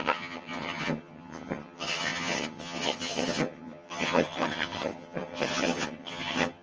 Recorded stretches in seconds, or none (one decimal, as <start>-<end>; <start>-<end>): none